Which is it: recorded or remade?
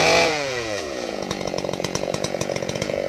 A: remade